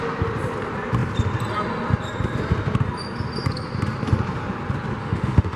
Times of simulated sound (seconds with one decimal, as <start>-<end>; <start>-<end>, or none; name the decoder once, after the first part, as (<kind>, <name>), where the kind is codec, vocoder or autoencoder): 5.0-5.6 (autoencoder, DAC-VAE)